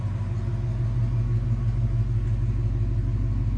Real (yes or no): yes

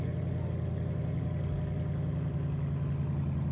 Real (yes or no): yes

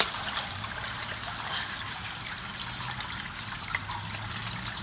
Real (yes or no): yes